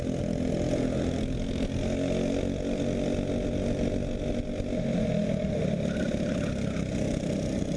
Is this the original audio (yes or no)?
yes